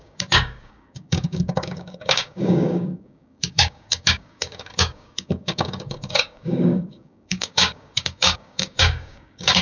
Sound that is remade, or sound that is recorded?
remade